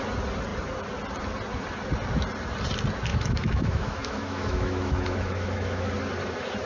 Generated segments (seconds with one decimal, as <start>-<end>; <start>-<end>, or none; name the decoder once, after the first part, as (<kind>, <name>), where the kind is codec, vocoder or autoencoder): 3.1-5.9 (autoencoder, DAC-VAE)